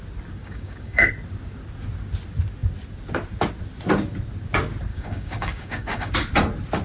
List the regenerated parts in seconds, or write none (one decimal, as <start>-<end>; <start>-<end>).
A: 0.4-1.1; 4.9-6.1